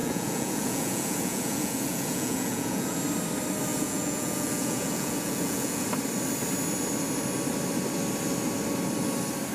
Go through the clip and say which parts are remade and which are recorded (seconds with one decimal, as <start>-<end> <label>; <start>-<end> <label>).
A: 0.0-3.0 remade; 3.0-3.7 recorded; 3.7-5.9 remade; 5.9-9.5 recorded